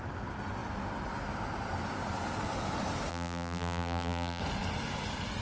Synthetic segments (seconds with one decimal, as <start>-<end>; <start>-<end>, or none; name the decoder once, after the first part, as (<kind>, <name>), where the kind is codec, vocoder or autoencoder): 3.1-4.4 (vocoder, BigVGAN v2)